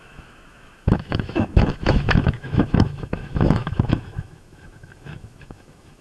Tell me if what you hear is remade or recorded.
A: remade